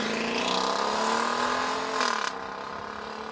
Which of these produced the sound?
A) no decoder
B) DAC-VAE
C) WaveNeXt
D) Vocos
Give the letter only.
A